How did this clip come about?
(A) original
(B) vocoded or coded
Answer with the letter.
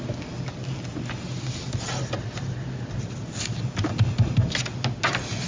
A